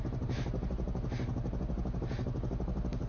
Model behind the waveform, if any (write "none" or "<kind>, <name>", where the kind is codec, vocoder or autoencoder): none